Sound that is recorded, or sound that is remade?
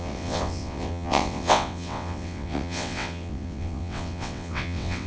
remade